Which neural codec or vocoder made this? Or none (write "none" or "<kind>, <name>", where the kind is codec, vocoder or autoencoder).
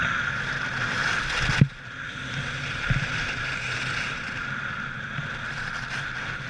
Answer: none